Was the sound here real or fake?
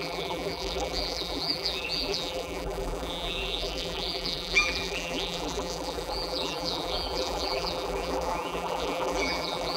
fake